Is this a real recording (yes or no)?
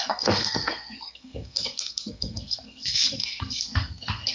no